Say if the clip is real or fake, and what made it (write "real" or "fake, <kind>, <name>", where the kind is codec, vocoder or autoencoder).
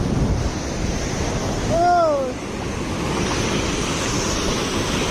real